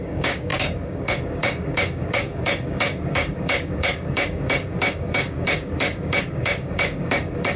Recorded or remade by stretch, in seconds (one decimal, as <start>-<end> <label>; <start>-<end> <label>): 0.0-7.6 remade